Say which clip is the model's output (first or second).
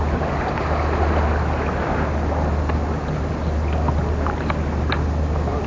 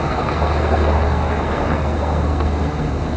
second